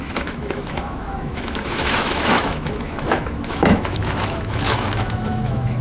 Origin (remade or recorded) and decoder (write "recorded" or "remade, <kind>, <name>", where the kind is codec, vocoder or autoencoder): remade, autoencoder, DAC-VAE